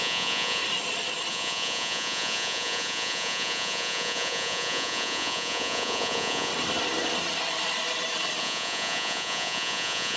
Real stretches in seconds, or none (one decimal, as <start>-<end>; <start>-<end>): 0.6-1.3; 6.5-8.4